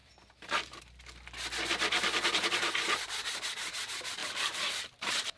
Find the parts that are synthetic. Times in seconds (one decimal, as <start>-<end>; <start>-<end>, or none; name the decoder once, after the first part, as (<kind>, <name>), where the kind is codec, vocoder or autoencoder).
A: 0.0-0.8 (vocoder, BigVGAN v2); 4.2-5.4